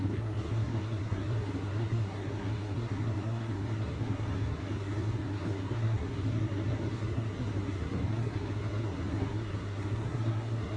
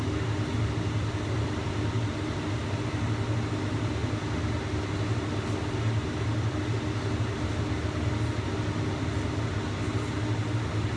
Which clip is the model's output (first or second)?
first